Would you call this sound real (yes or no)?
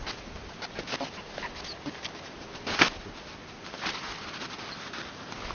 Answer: yes